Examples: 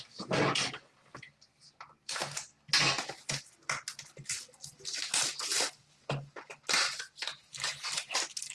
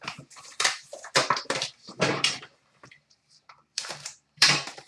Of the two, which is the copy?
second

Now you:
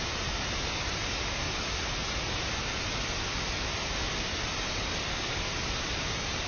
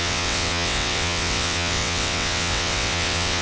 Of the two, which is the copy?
second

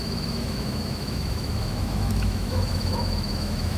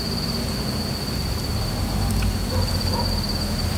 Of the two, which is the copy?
first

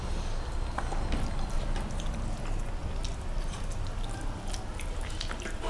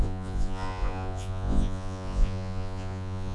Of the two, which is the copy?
second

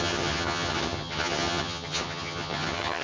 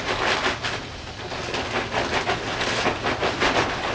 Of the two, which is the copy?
first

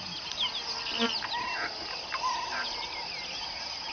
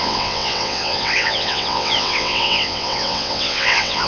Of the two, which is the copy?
second